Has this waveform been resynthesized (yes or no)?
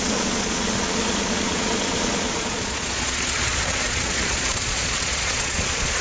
yes